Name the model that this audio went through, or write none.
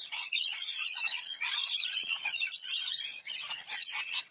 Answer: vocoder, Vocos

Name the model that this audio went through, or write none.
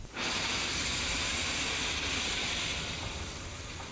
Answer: none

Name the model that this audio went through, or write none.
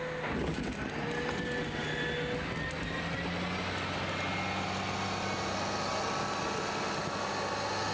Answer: none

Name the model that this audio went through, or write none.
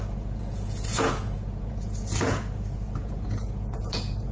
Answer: vocoder, Vocos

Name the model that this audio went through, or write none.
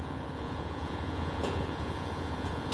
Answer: vocoder, Vocos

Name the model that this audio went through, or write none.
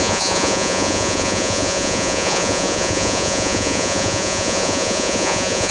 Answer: vocoder, Vocos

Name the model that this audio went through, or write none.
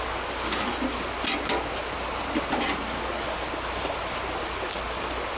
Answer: none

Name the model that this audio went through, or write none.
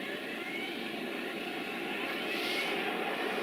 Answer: none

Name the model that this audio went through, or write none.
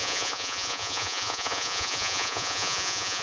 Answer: vocoder, Vocos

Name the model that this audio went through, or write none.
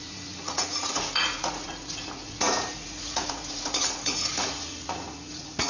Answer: vocoder, Vocos